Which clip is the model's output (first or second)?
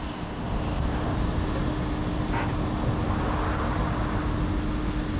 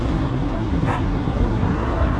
second